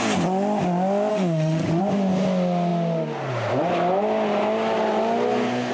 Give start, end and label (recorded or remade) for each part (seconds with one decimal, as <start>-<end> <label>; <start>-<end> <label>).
0.0-1.1 recorded; 1.1-1.8 remade; 1.8-5.7 recorded